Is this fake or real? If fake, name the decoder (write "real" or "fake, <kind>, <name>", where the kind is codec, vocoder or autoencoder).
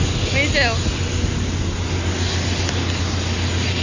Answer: real